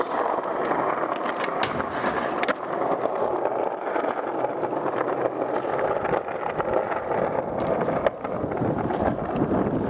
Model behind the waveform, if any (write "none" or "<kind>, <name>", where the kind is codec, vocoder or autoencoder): none